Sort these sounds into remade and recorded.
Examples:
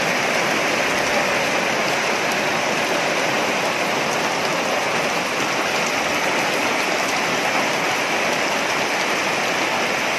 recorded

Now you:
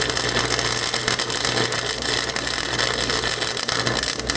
recorded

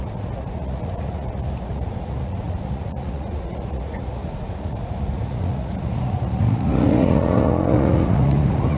remade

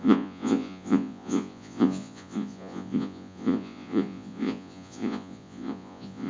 remade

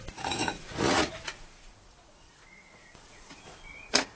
remade